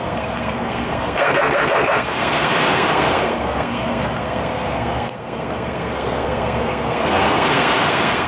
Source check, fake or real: fake